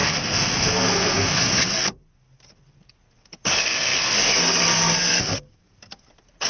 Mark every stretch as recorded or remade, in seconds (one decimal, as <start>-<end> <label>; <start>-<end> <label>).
0.0-1.4 remade; 1.4-6.5 recorded